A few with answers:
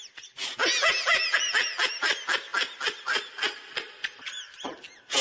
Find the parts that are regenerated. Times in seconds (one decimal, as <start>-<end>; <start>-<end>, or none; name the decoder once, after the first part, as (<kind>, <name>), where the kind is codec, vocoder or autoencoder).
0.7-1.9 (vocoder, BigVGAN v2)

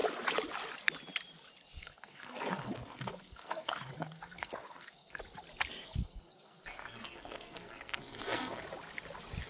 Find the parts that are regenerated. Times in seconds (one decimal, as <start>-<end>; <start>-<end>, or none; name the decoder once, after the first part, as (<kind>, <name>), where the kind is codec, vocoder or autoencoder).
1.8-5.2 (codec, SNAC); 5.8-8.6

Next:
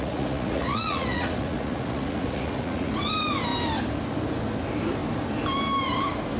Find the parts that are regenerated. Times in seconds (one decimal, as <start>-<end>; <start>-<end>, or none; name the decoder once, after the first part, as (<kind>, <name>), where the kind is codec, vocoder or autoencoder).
0.0-2.9 (vocoder, Vocos)